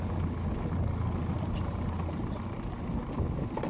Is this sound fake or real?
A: real